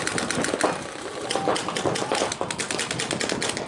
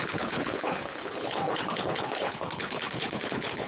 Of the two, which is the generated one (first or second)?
second